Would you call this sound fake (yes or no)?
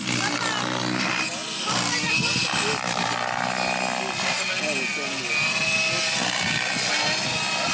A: no